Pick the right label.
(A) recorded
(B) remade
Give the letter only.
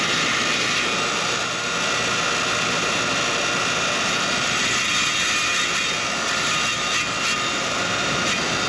A